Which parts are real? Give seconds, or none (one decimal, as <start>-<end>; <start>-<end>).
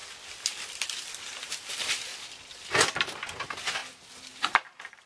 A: 0.0-5.1